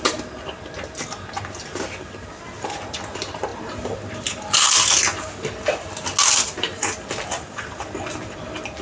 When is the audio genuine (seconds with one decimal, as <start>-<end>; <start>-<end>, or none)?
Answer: 0.0-8.8